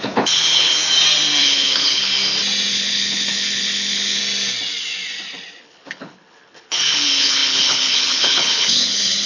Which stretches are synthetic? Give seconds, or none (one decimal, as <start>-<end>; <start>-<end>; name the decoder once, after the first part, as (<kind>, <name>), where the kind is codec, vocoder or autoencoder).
0.0-0.8 (codec, HILCodec); 1.4-2.1; 2.7-4.2; 5.6-9.3